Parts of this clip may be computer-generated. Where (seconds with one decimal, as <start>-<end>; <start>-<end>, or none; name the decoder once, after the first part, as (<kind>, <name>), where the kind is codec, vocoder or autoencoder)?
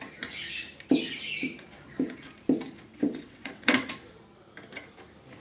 2.9-3.9 (vocoder, WaveNeXt)